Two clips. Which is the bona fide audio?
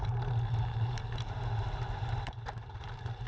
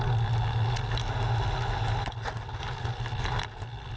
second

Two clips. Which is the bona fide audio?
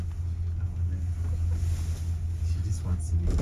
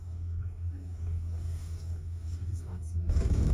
first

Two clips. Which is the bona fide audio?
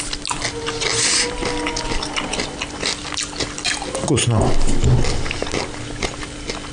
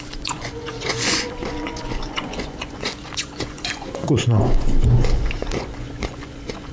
first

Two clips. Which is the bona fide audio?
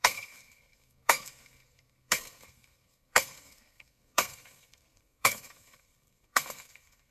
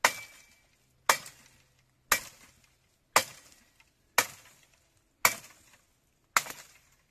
second